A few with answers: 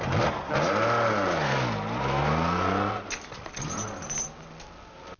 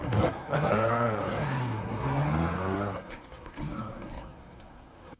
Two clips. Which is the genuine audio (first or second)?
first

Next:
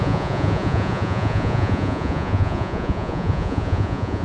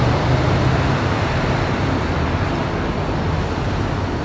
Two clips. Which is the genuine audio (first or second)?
second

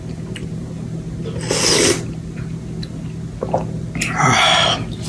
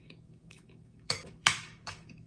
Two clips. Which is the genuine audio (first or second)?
first